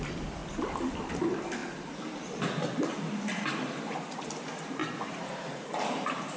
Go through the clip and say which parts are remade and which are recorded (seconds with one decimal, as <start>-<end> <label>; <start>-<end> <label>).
0.0-6.4 recorded